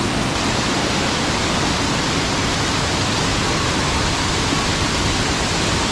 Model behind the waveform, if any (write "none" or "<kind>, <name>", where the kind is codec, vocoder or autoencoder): none